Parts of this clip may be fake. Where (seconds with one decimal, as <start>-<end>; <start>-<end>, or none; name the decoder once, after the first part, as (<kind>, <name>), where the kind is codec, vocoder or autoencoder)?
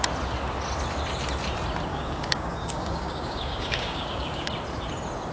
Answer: 1.9-4.5 (codec, DAC)